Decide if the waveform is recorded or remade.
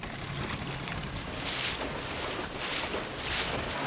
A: recorded